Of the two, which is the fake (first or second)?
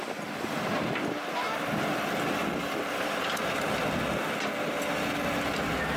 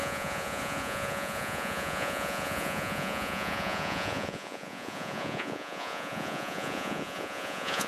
second